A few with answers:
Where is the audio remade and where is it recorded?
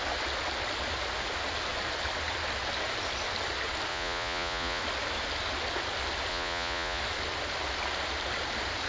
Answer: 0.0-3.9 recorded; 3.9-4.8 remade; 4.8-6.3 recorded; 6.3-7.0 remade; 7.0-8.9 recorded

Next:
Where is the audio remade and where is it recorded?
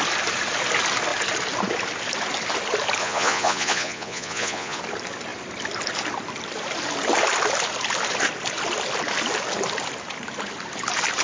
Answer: 0.0-3.0 recorded; 3.0-4.8 remade; 4.8-11.2 recorded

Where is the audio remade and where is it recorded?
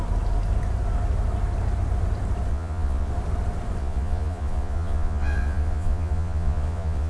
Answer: 0.0-2.5 recorded; 2.5-3.1 remade; 3.1-3.8 recorded; 3.8-7.1 remade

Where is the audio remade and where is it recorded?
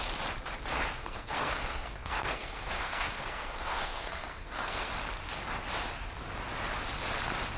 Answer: 0.0-1.0 recorded; 1.0-4.9 remade; 4.9-7.6 recorded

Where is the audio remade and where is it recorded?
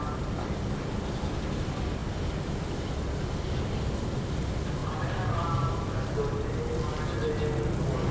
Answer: 0.0-8.1 recorded